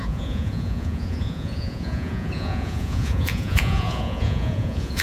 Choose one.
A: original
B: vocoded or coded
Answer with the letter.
B